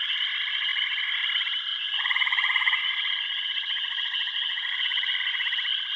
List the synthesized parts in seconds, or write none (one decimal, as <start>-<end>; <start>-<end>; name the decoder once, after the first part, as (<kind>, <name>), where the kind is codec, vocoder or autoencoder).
1.7-5.3 (vocoder, Vocos)